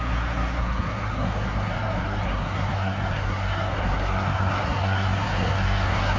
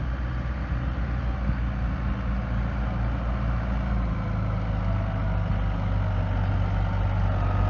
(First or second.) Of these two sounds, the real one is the second